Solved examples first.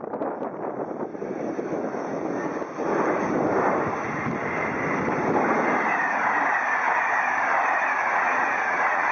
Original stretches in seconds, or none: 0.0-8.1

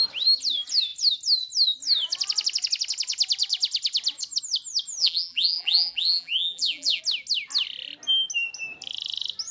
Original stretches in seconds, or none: 0.0-5.0; 7.0-9.5

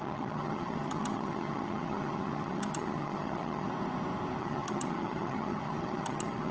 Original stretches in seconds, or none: 3.7-4.4

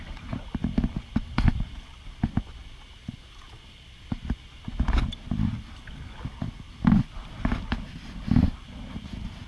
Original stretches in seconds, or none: 0.0-9.5

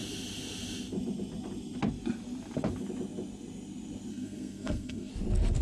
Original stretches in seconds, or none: 0.0-4.1; 5.1-5.6

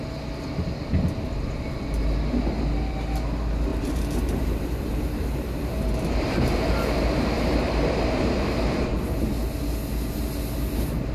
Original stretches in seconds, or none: 0.0-3.7; 8.9-11.1

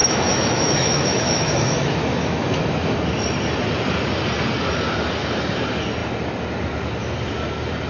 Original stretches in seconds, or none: 3.0-7.9

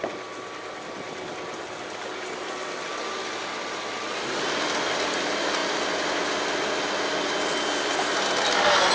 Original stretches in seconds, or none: 0.0-8.9